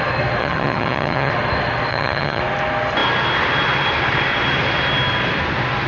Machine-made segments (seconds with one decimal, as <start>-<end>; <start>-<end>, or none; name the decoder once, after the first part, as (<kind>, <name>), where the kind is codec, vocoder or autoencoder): 0.4-1.3 (vocoder, HiFi-GAN); 1.9-2.4